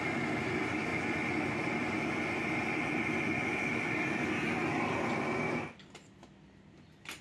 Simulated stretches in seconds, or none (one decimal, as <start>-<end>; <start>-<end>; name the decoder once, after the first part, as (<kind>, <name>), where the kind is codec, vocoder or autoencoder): none